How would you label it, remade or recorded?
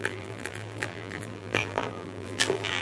remade